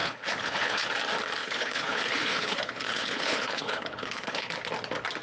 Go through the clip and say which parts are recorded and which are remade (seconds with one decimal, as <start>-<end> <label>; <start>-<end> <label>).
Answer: 0.0-0.9 remade; 0.9-1.4 recorded; 1.4-4.5 remade; 4.5-5.2 recorded